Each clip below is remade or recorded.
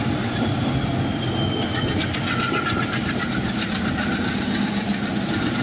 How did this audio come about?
recorded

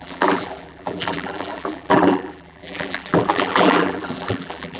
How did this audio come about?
remade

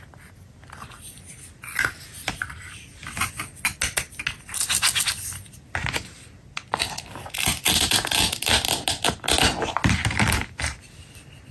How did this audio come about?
recorded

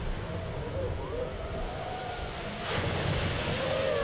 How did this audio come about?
remade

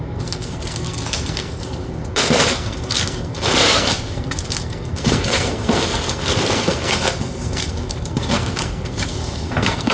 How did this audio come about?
remade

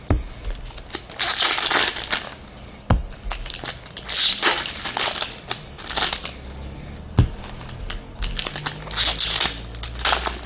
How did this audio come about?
recorded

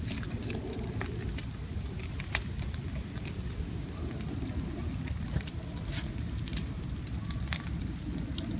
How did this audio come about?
recorded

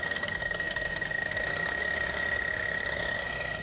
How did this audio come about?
remade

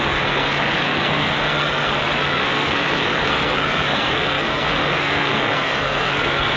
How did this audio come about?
remade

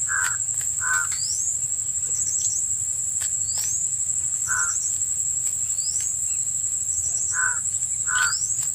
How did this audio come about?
recorded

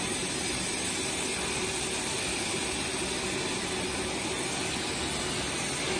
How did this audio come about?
recorded